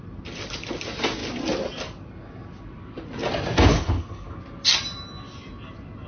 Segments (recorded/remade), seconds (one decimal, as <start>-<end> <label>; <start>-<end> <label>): 0.0-3.7 recorded; 3.7-4.3 remade; 4.3-6.1 recorded